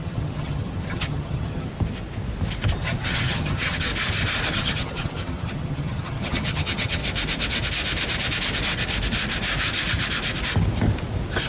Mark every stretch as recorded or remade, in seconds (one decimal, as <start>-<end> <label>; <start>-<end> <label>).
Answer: 0.0-1.7 remade; 1.7-2.8 recorded; 2.8-3.9 remade; 3.9-4.5 recorded; 4.5-7.0 remade; 7.0-11.5 recorded